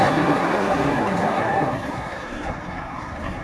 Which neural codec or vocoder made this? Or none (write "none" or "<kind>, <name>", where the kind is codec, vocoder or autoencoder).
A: codec, SNAC